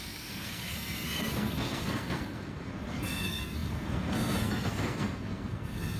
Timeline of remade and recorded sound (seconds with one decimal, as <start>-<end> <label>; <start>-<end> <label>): 0.0-6.0 remade